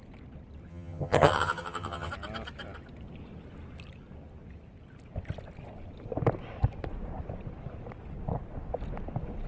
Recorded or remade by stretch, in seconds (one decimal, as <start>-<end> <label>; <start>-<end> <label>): 0.0-0.7 recorded; 0.7-2.1 remade; 2.1-9.5 recorded